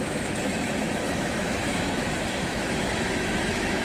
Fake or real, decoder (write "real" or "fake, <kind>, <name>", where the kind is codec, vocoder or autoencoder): fake, autoencoder, DAC-VAE